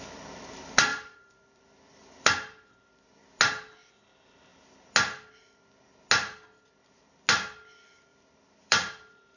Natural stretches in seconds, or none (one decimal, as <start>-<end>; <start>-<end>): 0.0-0.9; 3.1-8.1